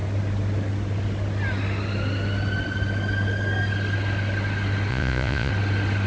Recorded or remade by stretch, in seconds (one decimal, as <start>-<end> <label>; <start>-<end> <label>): 0.0-4.9 recorded; 4.9-5.5 remade; 5.5-6.1 recorded